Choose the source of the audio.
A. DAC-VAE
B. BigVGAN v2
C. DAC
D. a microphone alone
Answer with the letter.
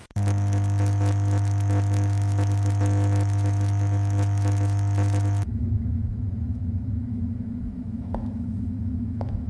A